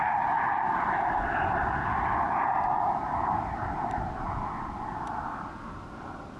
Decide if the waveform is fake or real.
real